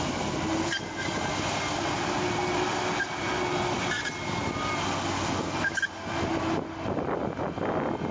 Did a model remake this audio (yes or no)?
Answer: no